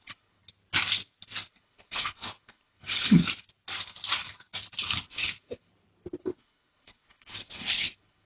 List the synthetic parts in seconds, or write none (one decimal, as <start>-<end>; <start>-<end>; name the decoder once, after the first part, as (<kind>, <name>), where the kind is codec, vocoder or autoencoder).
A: 0.0-0.4 (codec, HILCodec); 1.5-3.2; 4.9-5.7; 6.2-8.2